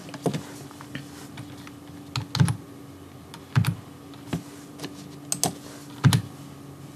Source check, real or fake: real